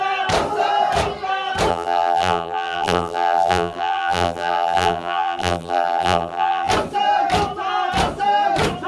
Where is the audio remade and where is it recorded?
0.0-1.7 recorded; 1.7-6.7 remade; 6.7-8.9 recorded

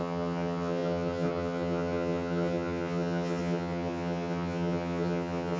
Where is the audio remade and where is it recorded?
0.0-5.6 remade